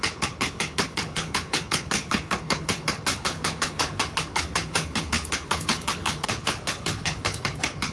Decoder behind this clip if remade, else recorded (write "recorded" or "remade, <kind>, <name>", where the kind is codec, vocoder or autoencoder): remade, codec, HILCodec